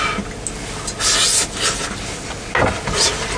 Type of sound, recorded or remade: recorded